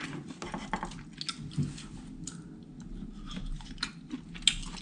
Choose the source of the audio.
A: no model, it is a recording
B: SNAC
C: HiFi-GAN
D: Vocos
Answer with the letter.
A